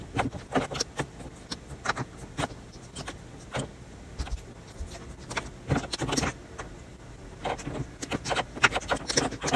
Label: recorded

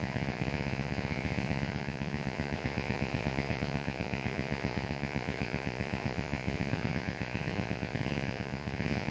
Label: remade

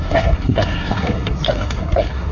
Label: remade